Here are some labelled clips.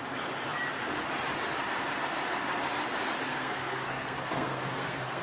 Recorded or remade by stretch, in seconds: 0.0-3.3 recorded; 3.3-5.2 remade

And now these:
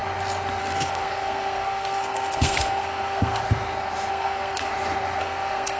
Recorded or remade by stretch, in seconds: 0.0-0.6 recorded; 0.6-3.4 remade; 3.4-4.1 recorded; 4.1-4.7 remade; 4.7-5.2 recorded; 5.2-5.8 remade